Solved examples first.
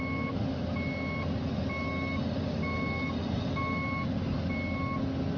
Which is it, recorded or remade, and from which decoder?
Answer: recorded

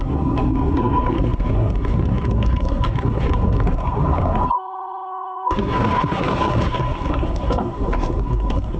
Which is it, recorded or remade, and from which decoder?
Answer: remade, codec, SNAC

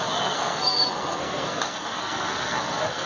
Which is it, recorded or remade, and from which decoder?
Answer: remade, codec, SNAC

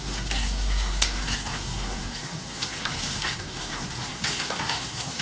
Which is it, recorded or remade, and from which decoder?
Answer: remade, codec, SNAC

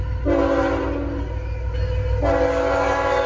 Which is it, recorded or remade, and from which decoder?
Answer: recorded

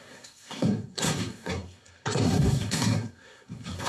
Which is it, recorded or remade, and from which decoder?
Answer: remade, codec, SNAC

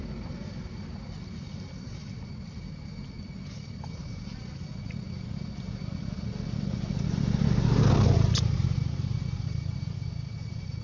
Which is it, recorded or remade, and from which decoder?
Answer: recorded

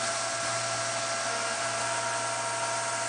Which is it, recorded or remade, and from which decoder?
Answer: recorded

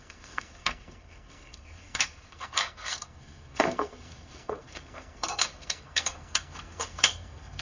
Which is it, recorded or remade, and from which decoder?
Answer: remade, codec, SNAC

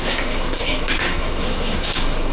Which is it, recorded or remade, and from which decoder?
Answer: remade, codec, SNAC